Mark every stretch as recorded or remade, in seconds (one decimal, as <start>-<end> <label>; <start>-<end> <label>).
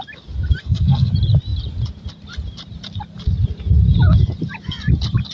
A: 0.0-0.6 recorded; 0.6-1.1 remade; 1.1-5.3 recorded